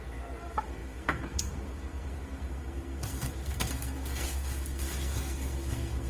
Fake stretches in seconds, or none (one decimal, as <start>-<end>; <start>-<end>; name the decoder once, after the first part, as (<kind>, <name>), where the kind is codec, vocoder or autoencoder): 0.0-6.1 (codec, SNAC)